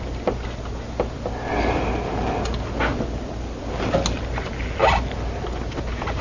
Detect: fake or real real